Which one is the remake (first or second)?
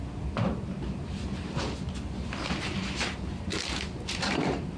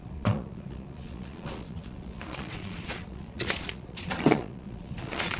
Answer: second